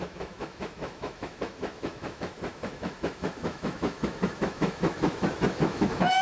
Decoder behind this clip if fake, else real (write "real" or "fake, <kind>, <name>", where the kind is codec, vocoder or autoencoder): fake, autoencoder, DAC-VAE